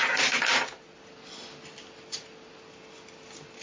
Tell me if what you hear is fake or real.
real